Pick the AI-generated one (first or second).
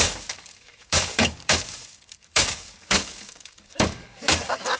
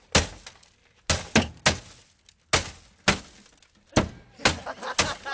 first